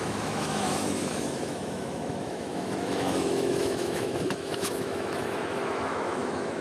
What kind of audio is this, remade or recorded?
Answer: remade